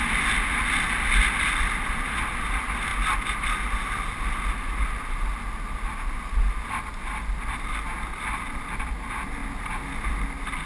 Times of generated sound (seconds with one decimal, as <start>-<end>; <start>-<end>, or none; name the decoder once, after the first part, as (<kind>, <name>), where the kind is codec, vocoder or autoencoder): none